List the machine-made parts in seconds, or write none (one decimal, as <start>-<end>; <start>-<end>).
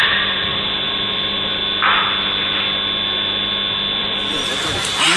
0.0-1.6; 4.0-5.2